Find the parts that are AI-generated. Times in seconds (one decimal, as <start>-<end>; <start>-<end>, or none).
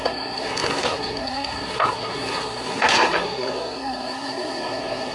0.0-5.1